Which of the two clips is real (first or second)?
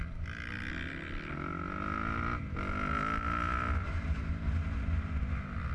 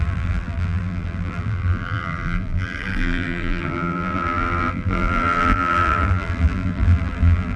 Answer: first